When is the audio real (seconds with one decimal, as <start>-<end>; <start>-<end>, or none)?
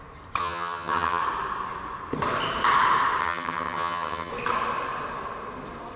0.0-0.4; 1.2-3.2; 4.3-6.0